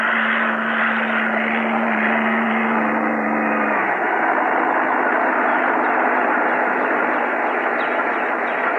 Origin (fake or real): real